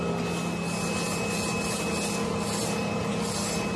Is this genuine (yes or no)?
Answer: yes